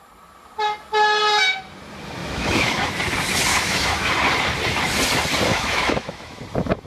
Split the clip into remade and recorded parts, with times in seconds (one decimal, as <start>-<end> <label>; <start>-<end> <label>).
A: 0.0-2.2 recorded; 2.2-2.9 remade; 2.9-3.5 recorded; 3.5-4.1 remade; 4.1-5.5 recorded; 5.5-6.4 remade; 6.4-6.9 recorded